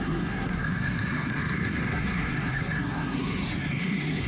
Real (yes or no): no